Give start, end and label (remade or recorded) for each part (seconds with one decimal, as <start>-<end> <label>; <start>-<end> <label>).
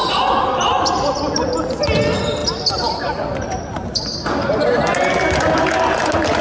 0.0-0.8 remade; 0.8-6.4 recorded